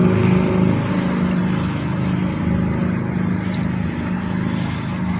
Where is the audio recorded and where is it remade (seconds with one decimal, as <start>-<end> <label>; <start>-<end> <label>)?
0.0-5.2 recorded